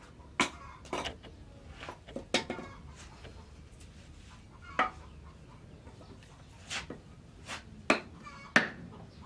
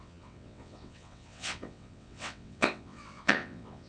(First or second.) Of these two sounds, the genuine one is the first